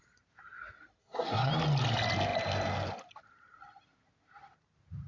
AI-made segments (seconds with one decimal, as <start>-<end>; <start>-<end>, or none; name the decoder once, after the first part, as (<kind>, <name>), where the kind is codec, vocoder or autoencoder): 1.0-1.5 (codec, SNAC)